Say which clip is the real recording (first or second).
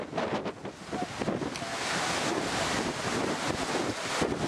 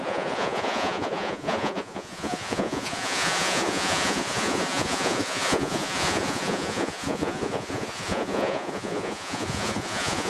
first